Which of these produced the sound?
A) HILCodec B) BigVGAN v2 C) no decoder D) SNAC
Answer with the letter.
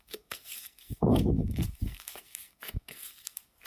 D